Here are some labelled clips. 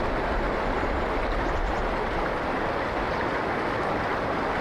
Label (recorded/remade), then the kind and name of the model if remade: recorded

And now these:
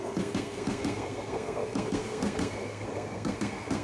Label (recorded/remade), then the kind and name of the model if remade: remade, codec, SNAC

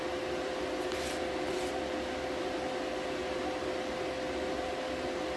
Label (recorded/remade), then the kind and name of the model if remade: recorded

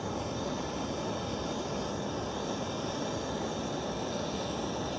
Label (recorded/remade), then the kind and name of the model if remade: recorded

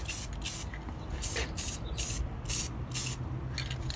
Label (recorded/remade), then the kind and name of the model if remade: recorded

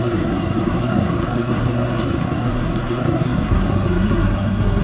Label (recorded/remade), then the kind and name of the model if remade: remade, codec, SNAC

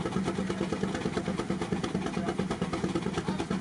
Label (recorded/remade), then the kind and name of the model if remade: recorded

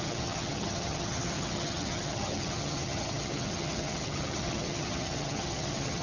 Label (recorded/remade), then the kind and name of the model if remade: remade, vocoder, HiFi-GAN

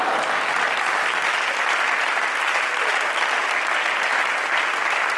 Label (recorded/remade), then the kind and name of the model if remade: recorded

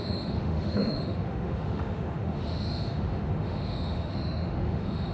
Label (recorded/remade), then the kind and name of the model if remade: remade, autoencoder, DAC-VAE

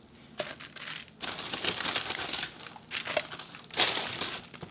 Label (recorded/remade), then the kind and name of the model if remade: recorded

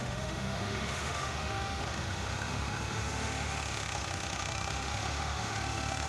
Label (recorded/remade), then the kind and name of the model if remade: remade, autoencoder, DAC-VAE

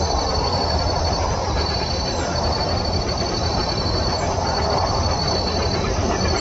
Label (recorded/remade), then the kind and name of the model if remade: remade, vocoder, BigVGAN v2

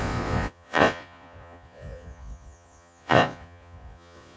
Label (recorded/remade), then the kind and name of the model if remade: remade, vocoder, Vocos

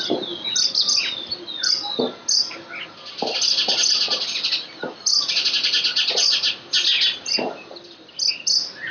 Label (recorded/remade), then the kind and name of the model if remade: recorded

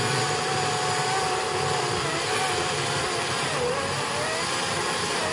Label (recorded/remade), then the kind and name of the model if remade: recorded